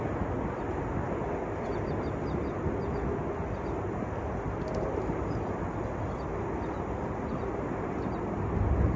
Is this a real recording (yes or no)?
yes